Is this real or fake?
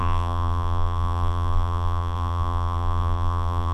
fake